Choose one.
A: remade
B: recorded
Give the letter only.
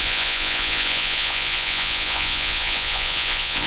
A